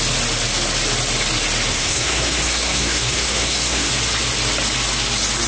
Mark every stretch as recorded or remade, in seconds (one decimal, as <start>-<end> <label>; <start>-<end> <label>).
0.0-1.7 recorded; 1.7-3.9 remade; 3.9-5.5 recorded